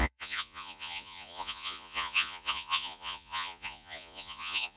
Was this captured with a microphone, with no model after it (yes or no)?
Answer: no